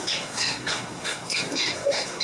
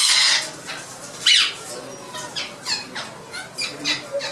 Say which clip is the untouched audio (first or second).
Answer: second